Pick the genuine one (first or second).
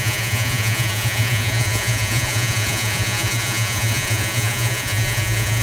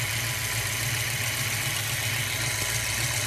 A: second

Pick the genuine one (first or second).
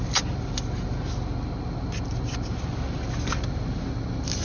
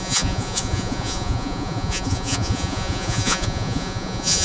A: first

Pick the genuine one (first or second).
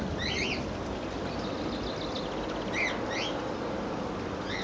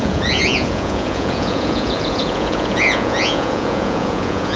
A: first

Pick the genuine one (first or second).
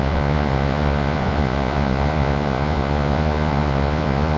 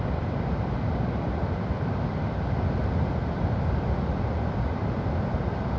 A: second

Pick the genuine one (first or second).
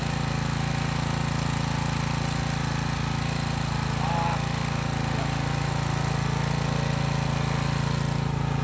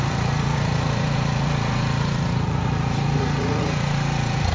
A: first